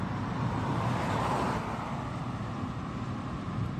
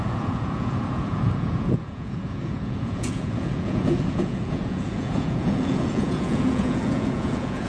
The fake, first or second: second